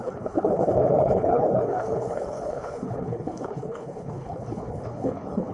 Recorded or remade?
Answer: remade